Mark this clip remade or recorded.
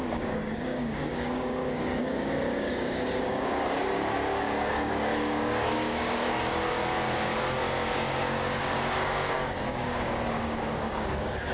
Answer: remade